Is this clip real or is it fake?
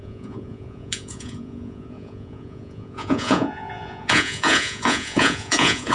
fake